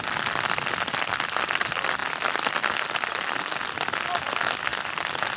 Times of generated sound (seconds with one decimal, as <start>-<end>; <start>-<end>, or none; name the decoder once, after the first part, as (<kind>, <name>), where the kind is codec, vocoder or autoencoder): 4.7-5.4 (vocoder, BigVGAN v2)